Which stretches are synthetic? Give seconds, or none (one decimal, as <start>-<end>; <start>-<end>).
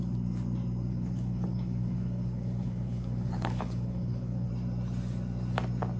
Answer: 0.9-4.5